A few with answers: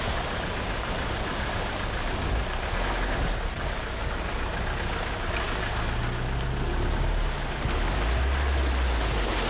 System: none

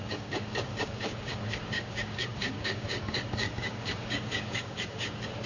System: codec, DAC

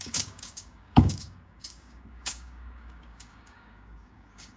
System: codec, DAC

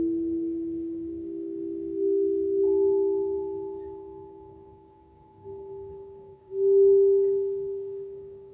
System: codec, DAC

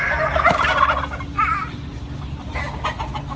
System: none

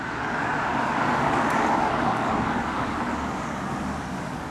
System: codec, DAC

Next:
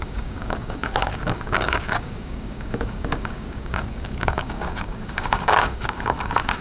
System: codec, DAC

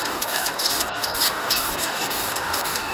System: codec, DAC